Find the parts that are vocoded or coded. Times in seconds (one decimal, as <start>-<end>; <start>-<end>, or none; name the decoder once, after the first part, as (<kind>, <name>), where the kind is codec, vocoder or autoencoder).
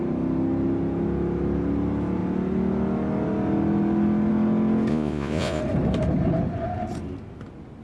4.9-5.6 (vocoder, Vocos)